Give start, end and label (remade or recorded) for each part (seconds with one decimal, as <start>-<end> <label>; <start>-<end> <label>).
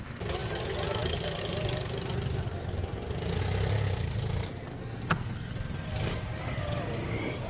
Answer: 0.0-4.7 recorded; 4.7-5.5 remade; 5.5-7.5 recorded